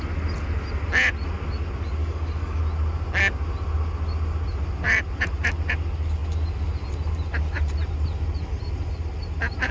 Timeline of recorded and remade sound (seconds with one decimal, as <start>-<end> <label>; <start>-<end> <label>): 0.0-2.0 recorded; 2.0-2.6 remade; 2.6-9.7 recorded